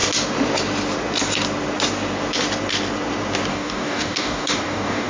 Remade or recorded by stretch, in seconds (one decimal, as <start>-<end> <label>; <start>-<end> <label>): 0.0-3.5 recorded; 3.5-5.1 remade